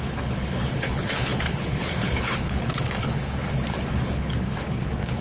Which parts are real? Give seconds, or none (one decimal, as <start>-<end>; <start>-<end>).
none